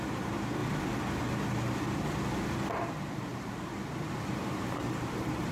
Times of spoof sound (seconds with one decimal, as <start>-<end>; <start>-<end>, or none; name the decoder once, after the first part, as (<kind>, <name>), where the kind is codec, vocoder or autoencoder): 0.0-0.6 (vocoder, BigVGAN v2); 2.7-5.5